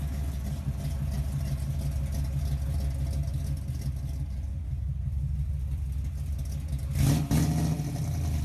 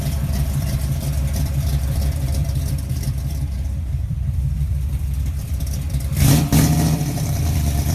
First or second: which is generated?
second